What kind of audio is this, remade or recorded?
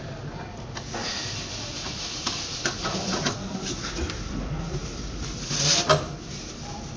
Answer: remade